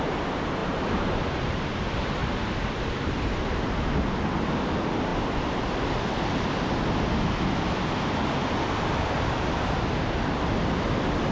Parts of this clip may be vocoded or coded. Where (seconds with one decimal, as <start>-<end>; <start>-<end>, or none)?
0.6-1.8; 2.2-3.3